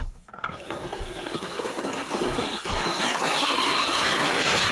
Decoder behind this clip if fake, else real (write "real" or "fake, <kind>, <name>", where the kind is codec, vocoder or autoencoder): fake, codec, SNAC